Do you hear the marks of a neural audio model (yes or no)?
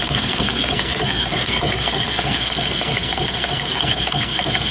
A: yes